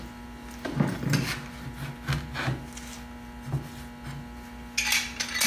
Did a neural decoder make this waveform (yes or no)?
no